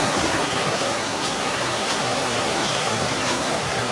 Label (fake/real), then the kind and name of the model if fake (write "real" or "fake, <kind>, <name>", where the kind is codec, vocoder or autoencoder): fake, codec, SNAC